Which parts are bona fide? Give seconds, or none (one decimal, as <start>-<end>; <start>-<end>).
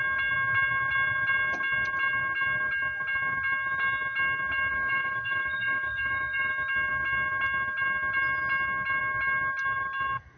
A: 0.0-4.7; 6.5-10.4